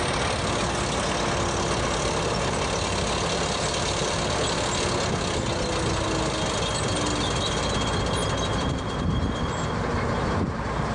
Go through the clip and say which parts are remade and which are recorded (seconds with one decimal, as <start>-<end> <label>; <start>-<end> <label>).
0.0-8.2 recorded; 8.2-9.8 remade; 9.8-10.9 recorded